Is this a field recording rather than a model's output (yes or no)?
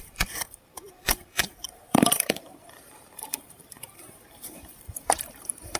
no